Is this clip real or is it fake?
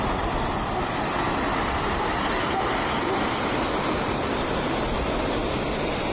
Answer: real